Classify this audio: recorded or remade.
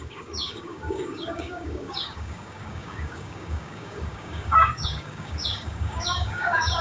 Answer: remade